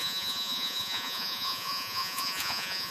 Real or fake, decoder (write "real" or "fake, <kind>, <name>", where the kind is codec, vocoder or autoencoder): fake, vocoder, Vocos